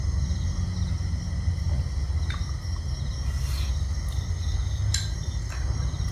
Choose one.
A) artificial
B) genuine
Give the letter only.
B